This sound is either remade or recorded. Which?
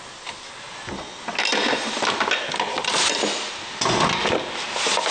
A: recorded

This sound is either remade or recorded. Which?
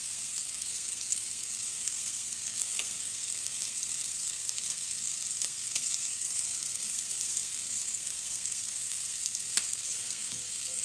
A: remade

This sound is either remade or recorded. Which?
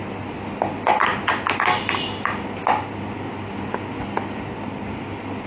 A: recorded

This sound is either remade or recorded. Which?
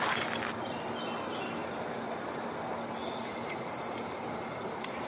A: recorded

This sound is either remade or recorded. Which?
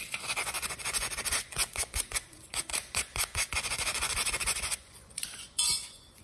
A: remade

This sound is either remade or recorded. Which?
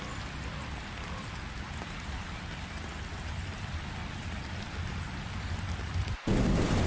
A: recorded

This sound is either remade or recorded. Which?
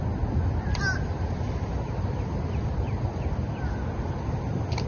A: recorded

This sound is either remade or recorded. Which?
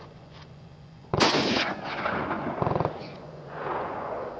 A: remade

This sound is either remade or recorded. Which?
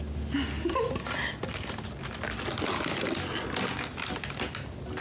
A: recorded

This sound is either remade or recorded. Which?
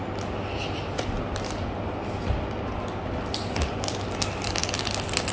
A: recorded